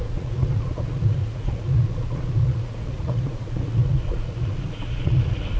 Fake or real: fake